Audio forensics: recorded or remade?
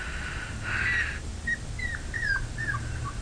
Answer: recorded